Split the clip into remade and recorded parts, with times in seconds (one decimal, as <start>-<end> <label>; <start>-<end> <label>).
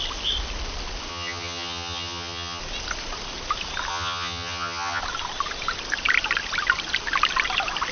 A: 0.0-1.1 recorded; 1.1-2.6 remade; 2.6-3.9 recorded; 3.9-5.0 remade; 5.0-7.9 recorded